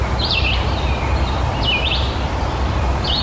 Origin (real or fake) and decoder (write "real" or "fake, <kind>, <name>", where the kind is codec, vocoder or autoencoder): fake, vocoder, BigVGAN v2